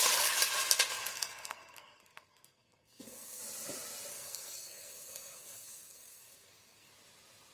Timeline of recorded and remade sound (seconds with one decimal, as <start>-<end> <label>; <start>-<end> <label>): 0.0-1.1 recorded; 1.1-3.4 remade; 3.4-4.1 recorded; 4.1-6.9 remade; 6.9-7.5 recorded